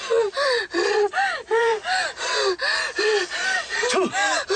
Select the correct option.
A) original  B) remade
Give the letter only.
B